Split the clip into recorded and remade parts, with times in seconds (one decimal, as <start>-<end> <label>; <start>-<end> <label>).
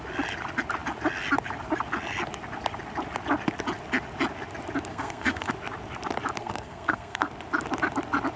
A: 0.0-4.9 recorded; 4.9-5.5 remade; 5.5-6.4 recorded; 6.4-7.3 remade; 7.3-8.4 recorded